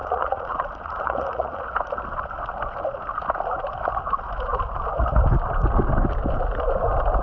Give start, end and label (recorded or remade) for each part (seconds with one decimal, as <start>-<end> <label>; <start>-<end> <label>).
0.0-1.6 remade; 1.6-7.2 recorded